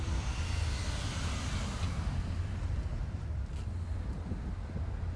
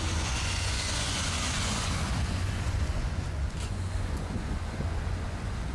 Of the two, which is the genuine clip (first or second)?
first